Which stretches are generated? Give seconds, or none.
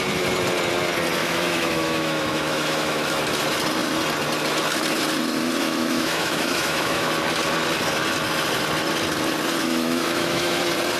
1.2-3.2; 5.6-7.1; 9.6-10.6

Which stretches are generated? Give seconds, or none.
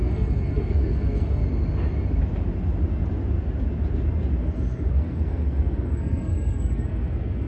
0.0-1.4; 4.4-7.5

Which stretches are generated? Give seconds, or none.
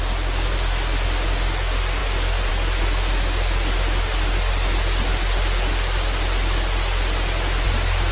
none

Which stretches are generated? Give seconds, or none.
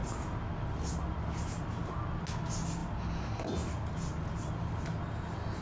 none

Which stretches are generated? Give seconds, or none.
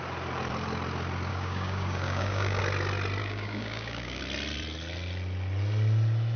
1.3-2.6; 3.2-4.2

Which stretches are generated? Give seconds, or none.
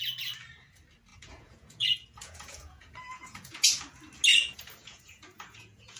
1.1-3.7; 4.3-6.0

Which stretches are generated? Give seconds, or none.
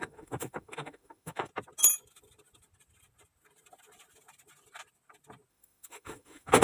0.0-1.5; 5.5-6.6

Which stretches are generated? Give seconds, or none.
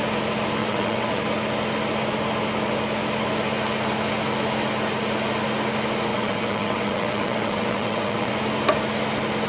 0.6-1.2; 6.1-8.3